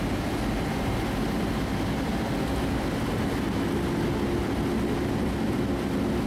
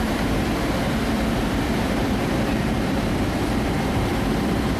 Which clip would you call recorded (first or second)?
first